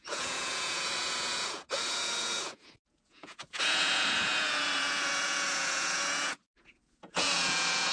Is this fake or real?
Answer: fake